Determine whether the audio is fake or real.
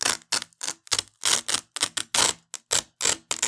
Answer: real